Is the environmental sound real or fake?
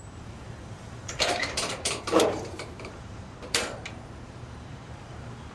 fake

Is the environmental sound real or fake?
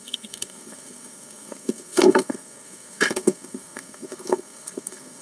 fake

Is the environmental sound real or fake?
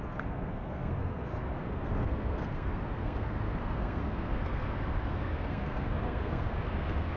fake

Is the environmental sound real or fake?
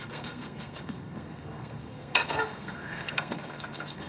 fake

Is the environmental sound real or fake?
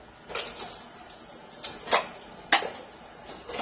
real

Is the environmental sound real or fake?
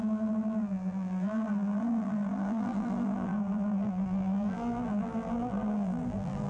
fake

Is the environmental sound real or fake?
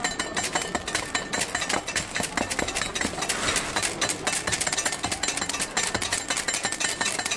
real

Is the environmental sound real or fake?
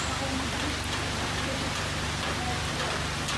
real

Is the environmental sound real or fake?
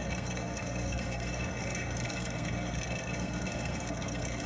fake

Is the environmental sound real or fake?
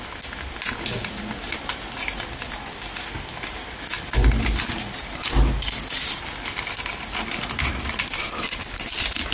real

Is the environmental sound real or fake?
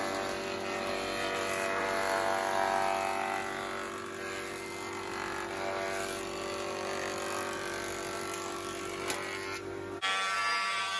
real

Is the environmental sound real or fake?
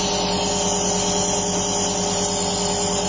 real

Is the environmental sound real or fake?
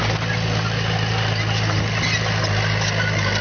real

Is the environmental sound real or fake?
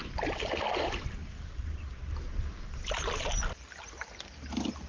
real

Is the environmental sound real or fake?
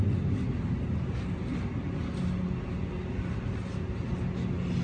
real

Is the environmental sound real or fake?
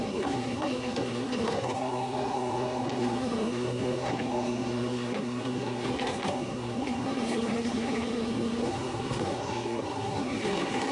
fake